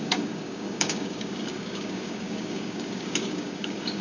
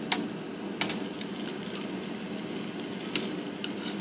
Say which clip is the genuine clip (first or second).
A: second